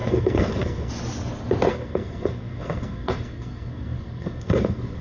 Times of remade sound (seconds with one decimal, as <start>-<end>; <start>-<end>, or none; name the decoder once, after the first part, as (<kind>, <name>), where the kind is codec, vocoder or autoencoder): 0.0-0.9 (codec, SNAC); 1.7-5.0